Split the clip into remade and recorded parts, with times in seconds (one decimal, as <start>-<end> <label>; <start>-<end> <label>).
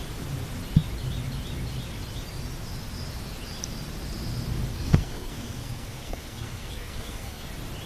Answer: 0.0-4.7 recorded; 4.7-7.5 remade; 7.5-7.9 recorded